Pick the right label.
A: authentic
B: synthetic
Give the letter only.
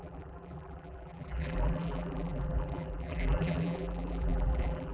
B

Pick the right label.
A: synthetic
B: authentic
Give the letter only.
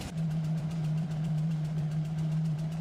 A